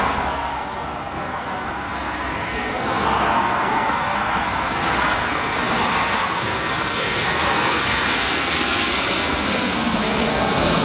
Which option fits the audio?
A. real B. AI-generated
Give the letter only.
B